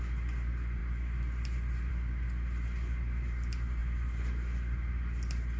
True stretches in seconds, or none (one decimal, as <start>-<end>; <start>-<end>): 0.0-0.8; 1.9-3.8; 4.3-5.6